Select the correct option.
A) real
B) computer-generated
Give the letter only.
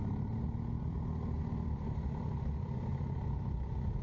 A